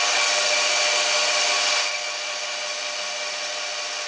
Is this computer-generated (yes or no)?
no